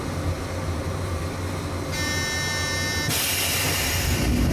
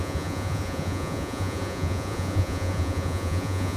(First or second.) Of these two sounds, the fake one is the second